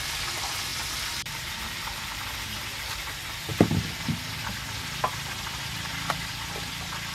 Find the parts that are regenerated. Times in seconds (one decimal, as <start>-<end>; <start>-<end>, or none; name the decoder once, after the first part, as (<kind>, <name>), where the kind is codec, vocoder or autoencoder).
none